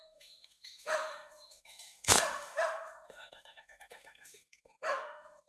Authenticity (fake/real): fake